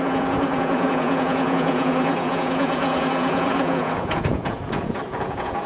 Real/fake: fake